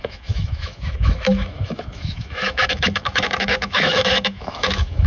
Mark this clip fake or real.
fake